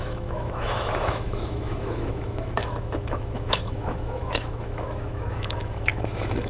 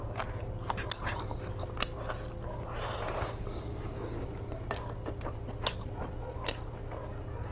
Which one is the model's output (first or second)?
first